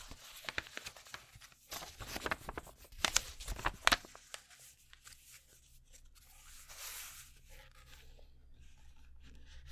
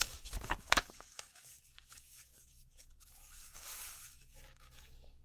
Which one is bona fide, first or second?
first